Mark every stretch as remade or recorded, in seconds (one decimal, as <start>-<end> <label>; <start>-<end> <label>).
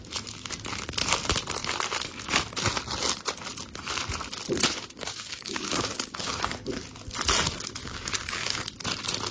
0.0-4.8 recorded; 4.8-6.4 remade; 6.4-7.8 recorded; 7.8-8.6 remade; 8.6-9.3 recorded